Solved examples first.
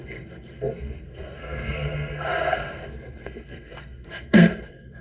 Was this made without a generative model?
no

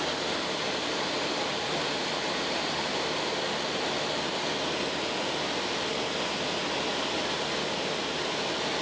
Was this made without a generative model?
yes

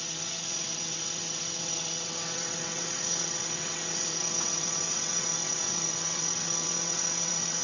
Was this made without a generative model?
no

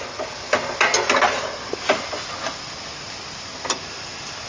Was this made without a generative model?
yes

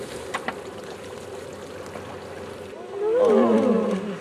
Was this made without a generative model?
yes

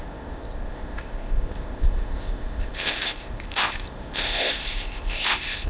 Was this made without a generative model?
no